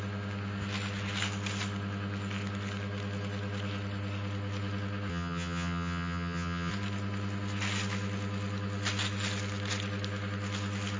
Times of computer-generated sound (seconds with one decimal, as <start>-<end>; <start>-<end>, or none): 5.1-6.7